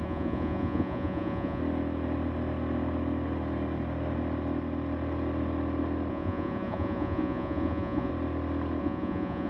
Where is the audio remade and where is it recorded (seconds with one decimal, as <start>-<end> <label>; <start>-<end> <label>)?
0.0-1.6 remade; 1.6-6.1 recorded; 6.1-8.1 remade; 8.1-8.8 recorded; 8.8-9.5 remade